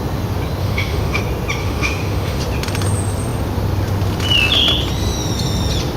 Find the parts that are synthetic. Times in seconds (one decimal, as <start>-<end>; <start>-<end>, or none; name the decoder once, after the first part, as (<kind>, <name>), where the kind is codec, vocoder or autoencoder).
0.6-1.2 (autoencoder, DAC-VAE); 1.6-2.4